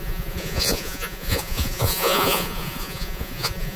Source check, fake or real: fake